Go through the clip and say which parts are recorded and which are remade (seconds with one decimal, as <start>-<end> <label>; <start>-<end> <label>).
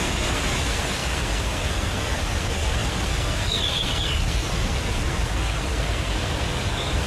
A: 0.0-7.1 remade